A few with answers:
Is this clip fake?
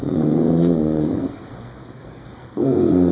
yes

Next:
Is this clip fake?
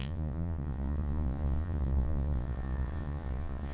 yes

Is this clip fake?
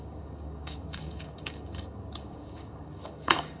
yes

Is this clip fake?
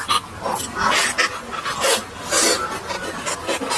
no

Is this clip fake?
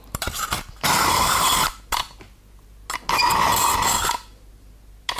no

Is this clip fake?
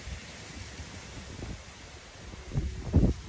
no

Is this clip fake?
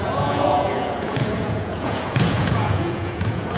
yes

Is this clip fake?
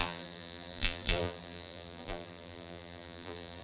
yes